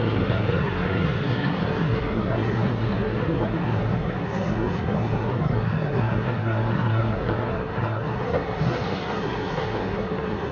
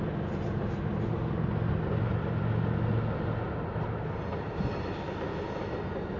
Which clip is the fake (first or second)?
first